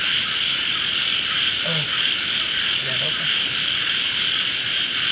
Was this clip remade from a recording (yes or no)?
no